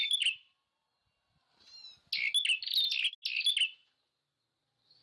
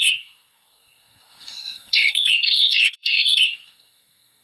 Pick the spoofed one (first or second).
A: second